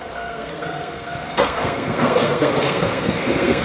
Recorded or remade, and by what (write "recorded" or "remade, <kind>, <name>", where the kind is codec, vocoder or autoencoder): remade, codec, SNAC